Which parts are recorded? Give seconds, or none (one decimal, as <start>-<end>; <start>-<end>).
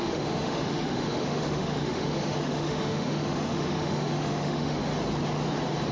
4.9-5.9